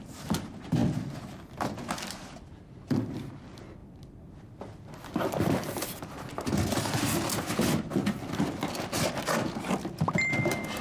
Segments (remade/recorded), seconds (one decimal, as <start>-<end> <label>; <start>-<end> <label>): 0.0-10.8 recorded